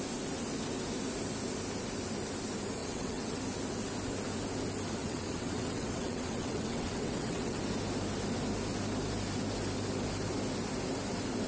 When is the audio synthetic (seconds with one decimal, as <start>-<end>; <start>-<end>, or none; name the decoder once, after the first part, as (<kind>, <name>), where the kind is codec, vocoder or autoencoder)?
2.8-3.4 (vocoder, WaveNeXt); 5.0-7.6